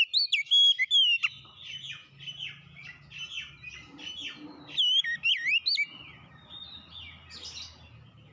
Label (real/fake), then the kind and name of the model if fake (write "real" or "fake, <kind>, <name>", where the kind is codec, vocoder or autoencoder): real